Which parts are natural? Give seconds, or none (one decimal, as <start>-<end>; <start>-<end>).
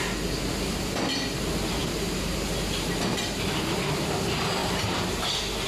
0.0-1.8; 3.4-4.6; 5.3-5.7